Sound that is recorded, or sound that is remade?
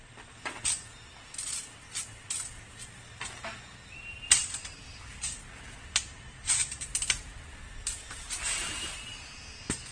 recorded